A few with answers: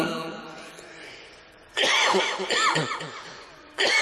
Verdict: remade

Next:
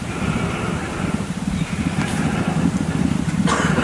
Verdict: recorded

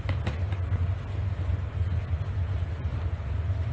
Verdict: recorded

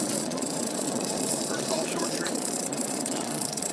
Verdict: remade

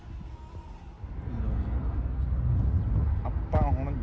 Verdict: recorded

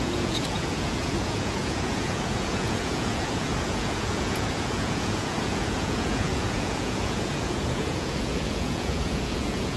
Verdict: remade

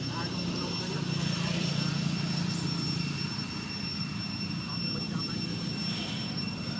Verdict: recorded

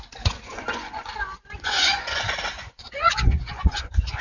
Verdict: remade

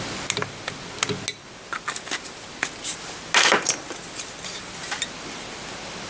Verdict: recorded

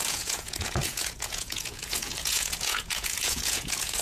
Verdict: remade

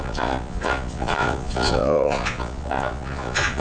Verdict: remade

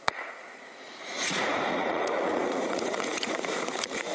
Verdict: remade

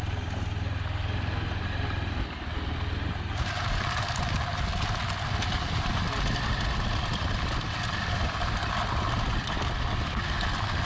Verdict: recorded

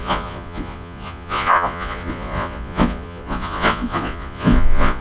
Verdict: remade